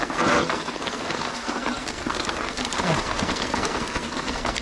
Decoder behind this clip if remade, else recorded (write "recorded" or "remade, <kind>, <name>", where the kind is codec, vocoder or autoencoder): remade, codec, SNAC